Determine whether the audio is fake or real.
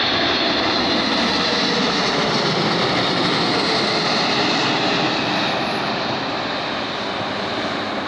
real